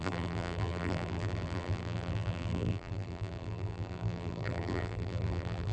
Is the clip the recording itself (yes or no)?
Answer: no